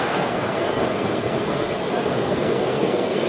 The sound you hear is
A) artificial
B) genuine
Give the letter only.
A